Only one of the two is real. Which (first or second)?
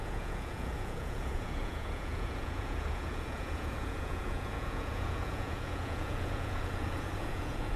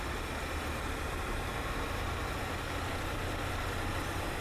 second